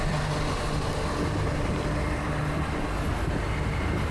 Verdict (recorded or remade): recorded